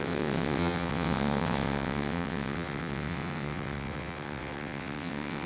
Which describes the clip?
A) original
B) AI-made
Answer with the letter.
B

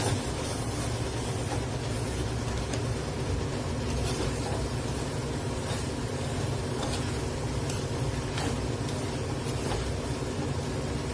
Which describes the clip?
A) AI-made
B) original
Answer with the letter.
B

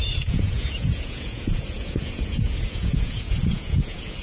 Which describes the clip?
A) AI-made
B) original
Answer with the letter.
A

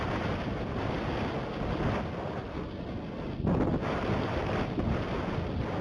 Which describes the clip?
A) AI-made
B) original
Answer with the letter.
B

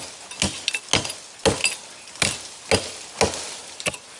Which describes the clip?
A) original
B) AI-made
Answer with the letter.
A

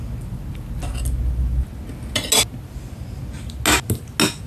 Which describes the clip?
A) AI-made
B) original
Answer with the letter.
B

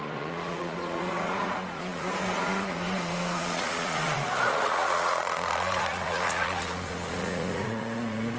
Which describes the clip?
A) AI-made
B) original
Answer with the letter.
A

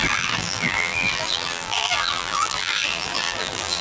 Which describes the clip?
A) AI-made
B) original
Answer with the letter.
A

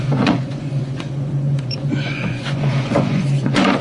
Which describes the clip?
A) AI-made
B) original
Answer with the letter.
A